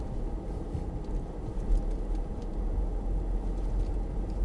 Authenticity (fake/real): real